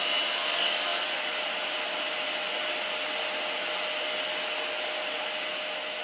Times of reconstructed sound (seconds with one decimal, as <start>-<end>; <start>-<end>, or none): none